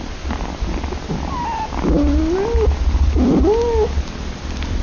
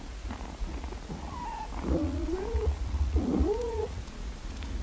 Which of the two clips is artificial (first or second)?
second